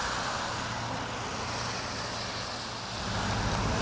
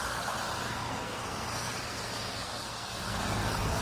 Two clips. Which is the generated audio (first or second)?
second